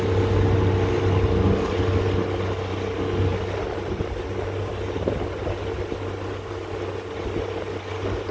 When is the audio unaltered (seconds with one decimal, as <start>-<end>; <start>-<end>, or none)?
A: 0.0-8.3